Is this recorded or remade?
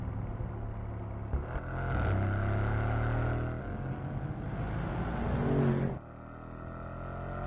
recorded